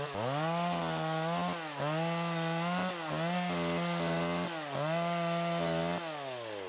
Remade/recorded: recorded